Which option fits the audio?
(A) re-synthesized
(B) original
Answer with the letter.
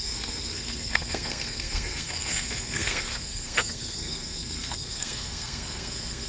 A